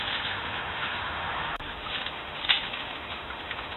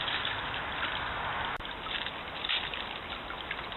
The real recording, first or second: second